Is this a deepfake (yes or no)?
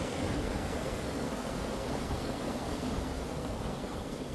yes